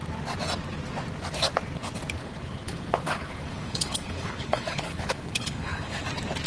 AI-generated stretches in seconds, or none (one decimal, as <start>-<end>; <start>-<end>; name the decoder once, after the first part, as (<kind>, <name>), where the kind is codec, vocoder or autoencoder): 2.2-6.0 (codec, HILCodec)